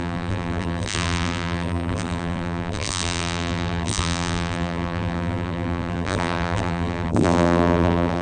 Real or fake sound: fake